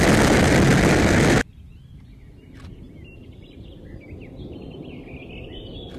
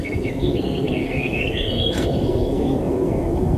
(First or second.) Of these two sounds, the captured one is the first